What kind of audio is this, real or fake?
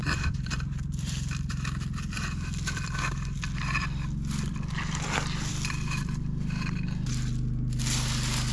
fake